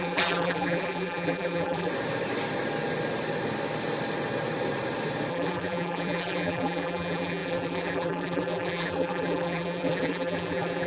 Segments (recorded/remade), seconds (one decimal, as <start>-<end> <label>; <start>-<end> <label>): 0.0-1.9 remade; 1.9-5.3 recorded; 5.3-10.9 remade